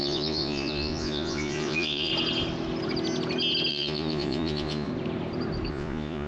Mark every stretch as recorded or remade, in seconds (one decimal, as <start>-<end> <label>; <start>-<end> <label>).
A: 0.0-2.1 remade; 2.1-3.7 recorded; 3.7-4.9 remade; 4.9-5.7 recorded; 5.7-6.3 remade